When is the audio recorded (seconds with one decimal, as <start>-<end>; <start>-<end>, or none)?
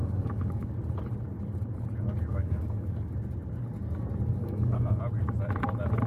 0.7-2.3; 3.1-4.4; 5.0-6.1